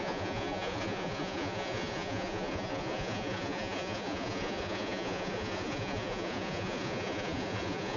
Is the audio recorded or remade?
remade